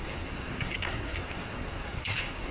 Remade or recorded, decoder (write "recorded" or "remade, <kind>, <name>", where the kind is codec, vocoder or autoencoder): remade, codec, SNAC